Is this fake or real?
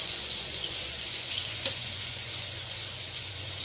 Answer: fake